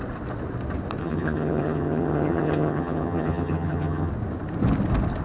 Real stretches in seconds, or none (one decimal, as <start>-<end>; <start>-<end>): 0.0-1.0; 4.1-5.2

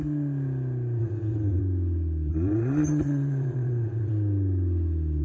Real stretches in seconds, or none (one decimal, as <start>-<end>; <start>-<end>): 0.0-1.0; 1.6-2.3; 4.1-5.2

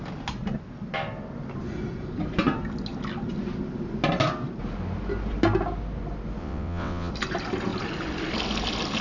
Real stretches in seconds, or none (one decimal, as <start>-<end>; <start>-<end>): 0.0-6.4; 7.1-9.0